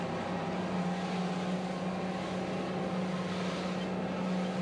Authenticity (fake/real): real